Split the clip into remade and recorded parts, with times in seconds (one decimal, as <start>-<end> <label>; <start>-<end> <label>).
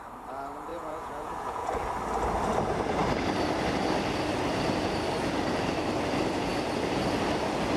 0.0-0.7 recorded; 0.7-1.7 remade; 1.7-7.8 recorded